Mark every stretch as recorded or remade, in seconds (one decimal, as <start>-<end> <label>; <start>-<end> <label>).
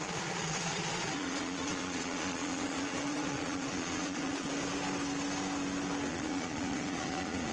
0.0-4.5 remade; 4.5-6.1 recorded; 6.1-7.5 remade